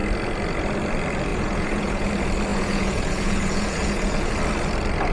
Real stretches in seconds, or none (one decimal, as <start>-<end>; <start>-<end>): 0.0-1.3; 2.1-2.5; 4.3-5.1